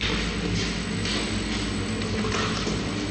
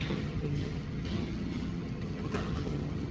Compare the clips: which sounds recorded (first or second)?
first